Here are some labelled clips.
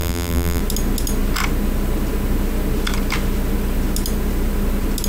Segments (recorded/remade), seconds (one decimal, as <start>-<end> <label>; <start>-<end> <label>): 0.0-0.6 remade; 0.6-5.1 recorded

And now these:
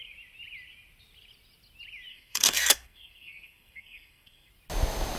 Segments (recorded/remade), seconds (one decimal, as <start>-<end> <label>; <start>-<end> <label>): 0.0-2.1 recorded; 2.1-4.5 remade; 4.5-5.2 recorded

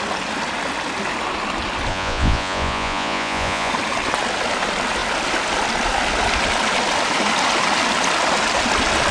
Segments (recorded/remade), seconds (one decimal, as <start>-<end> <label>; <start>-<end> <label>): 0.0-1.9 recorded; 1.9-3.7 remade; 3.7-9.1 recorded

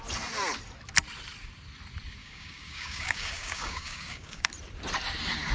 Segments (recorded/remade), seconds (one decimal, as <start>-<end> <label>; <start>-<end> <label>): 0.0-2.2 recorded; 2.2-4.5 remade; 4.5-5.5 recorded